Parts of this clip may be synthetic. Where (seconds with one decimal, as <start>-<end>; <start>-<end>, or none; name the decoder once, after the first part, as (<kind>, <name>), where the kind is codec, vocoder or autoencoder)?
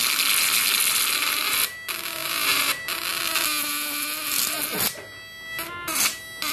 none